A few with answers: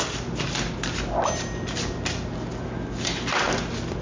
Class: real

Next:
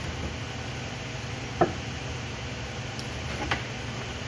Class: real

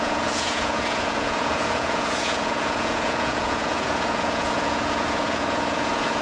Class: fake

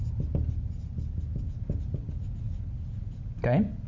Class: real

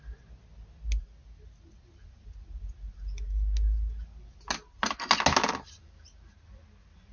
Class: real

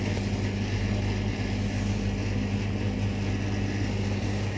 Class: real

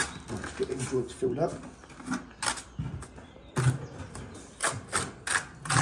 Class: real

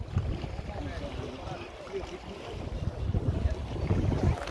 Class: real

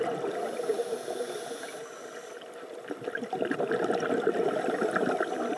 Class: real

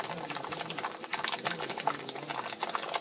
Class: real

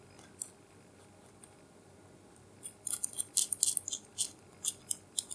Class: real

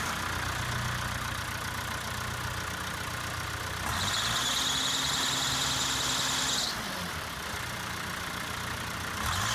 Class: real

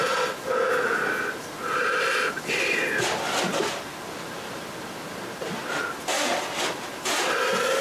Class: real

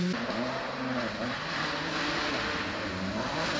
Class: real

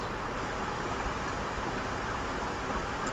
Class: real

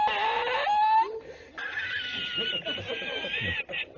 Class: real